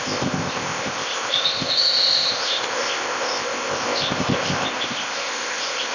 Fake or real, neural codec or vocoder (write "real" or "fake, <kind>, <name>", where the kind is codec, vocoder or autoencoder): fake, codec, ZipCodec